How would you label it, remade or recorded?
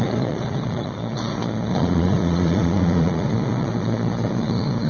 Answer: remade